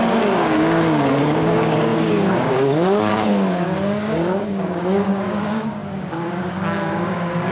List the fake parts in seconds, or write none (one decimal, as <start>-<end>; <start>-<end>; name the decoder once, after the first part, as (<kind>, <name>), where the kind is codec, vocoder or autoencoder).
0.0-7.5 (codec, DAC)

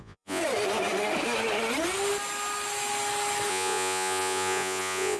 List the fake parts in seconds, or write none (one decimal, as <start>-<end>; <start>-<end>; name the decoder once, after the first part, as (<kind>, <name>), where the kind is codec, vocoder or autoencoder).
0.0-0.4 (vocoder, Vocos); 3.5-5.2